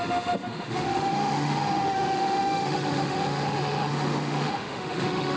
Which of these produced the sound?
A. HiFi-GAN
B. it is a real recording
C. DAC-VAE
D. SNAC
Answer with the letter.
C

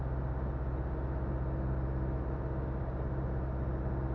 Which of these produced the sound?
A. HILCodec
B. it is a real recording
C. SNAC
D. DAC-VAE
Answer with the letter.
B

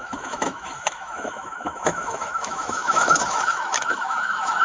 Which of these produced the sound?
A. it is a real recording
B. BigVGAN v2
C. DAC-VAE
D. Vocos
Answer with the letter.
C